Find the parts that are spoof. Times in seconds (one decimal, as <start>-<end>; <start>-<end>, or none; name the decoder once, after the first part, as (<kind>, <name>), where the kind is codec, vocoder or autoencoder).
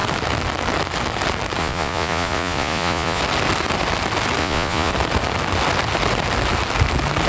1.6-3.2 (vocoder, Vocos); 4.4-4.9